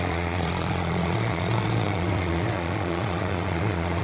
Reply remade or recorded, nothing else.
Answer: remade